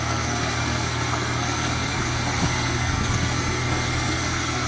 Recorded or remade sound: remade